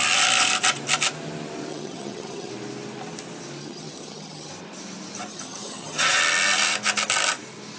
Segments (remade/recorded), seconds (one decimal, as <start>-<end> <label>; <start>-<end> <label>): 0.0-1.7 recorded; 1.7-2.5 remade; 2.5-3.6 recorded; 3.6-4.5 remade; 4.5-5.3 recorded; 5.3-6.2 remade; 6.2-7.8 recorded